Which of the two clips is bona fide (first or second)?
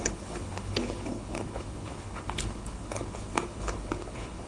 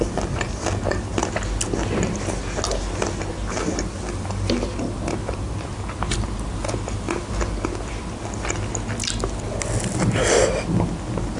second